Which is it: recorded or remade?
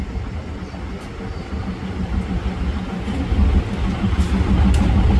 recorded